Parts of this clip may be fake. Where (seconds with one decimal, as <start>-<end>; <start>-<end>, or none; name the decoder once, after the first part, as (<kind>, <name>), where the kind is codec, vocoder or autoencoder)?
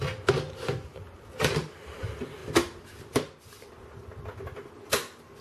none